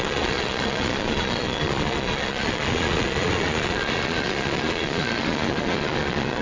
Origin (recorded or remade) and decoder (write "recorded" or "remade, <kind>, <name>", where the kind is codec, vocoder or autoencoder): remade, vocoder, Vocos